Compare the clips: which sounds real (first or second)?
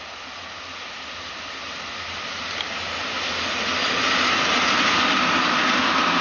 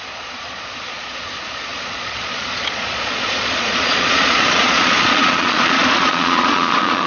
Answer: first